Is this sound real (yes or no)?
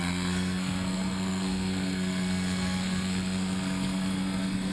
no